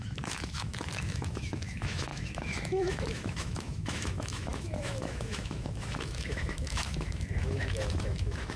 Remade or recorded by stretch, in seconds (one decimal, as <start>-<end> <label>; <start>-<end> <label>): 0.0-8.6 remade